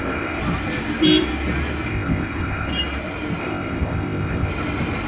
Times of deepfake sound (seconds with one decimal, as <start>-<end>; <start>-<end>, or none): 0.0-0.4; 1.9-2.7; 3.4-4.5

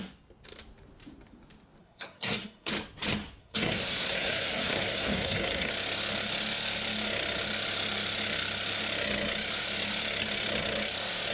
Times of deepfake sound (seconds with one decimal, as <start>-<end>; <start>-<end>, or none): 1.8-2.7; 3.4-5.7

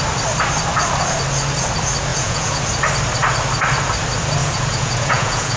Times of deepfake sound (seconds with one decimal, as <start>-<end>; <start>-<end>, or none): 2.1-2.6; 4.4-5.6

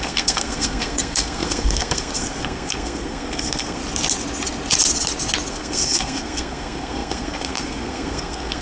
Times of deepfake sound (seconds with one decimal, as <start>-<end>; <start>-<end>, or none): 0.0-3.8; 5.5-8.6

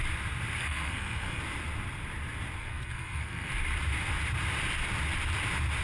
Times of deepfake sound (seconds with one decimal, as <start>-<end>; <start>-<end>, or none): 0.6-1.4; 2.6-3.5

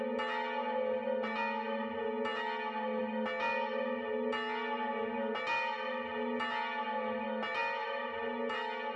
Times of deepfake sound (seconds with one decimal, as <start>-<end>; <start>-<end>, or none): none

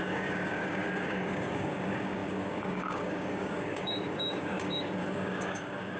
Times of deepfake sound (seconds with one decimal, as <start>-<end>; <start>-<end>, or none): 0.0-6.0